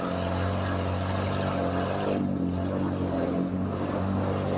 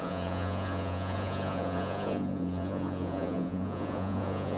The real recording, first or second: first